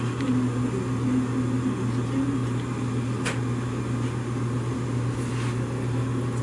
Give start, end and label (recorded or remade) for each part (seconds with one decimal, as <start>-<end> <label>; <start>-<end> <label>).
0.0-6.4 recorded